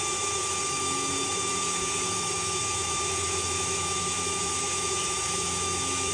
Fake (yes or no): yes